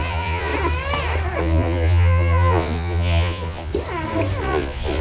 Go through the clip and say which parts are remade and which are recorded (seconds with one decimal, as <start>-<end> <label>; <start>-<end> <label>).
0.0-0.5 remade; 0.5-1.4 recorded; 1.4-3.7 remade; 3.7-4.4 recorded; 4.4-5.0 remade